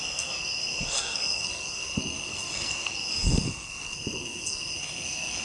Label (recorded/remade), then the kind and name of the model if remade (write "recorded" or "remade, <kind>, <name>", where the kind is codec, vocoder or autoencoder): remade, codec, SNAC